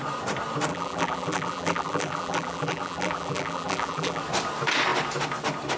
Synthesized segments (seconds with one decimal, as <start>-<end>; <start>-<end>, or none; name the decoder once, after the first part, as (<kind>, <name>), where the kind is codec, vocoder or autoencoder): 0.7-4.2 (vocoder, BigVGAN v2)